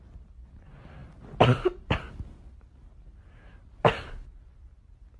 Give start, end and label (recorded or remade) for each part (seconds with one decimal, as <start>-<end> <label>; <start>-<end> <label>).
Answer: 0.0-1.0 recorded; 1.0-4.1 remade; 4.1-5.2 recorded